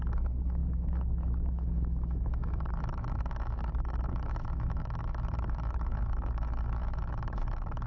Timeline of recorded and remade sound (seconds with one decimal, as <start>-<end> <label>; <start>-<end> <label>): 0.0-7.9 remade